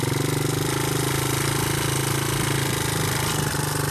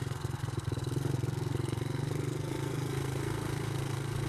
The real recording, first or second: first